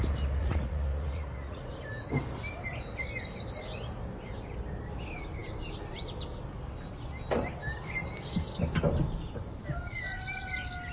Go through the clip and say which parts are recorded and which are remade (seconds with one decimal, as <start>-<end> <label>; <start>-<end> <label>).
0.0-0.4 recorded; 0.4-1.7 remade; 1.7-10.9 recorded